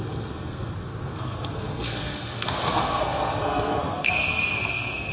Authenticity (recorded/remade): remade